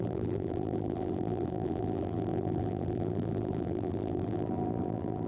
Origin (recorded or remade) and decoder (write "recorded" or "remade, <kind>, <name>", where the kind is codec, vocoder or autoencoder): remade, vocoder, BigVGAN v2